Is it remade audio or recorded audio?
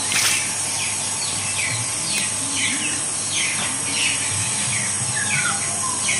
recorded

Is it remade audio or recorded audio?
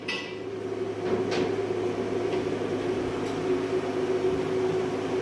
recorded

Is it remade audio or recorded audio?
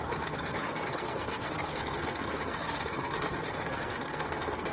remade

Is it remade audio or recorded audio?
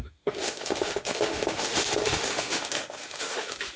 remade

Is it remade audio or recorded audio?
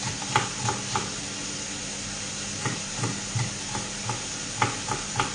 recorded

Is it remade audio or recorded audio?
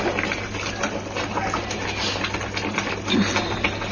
recorded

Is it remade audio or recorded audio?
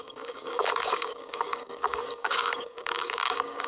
remade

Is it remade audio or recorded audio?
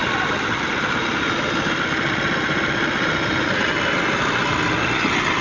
recorded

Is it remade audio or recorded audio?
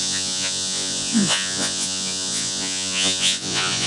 remade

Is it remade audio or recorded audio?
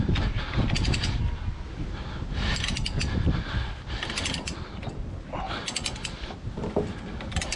recorded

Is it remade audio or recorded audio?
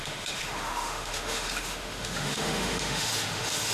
remade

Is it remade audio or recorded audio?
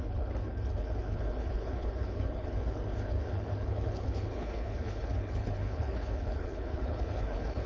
remade